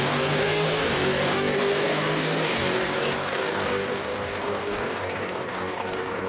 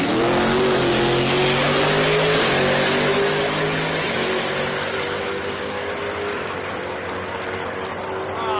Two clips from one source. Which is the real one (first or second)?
second